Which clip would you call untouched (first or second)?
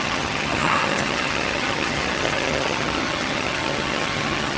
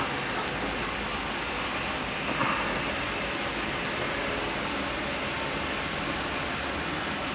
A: second